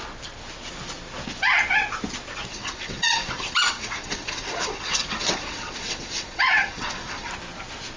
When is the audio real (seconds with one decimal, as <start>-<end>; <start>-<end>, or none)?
0.0-2.5; 7.3-8.0